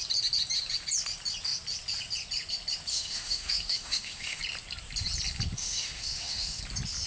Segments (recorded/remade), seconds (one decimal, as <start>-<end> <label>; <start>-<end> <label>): 0.0-2.9 recorded; 2.9-4.4 remade; 4.4-5.6 recorded; 5.6-6.6 remade; 6.6-7.1 recorded